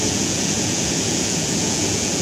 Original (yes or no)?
no